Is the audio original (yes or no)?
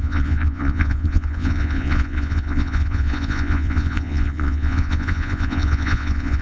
no